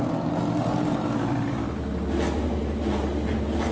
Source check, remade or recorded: recorded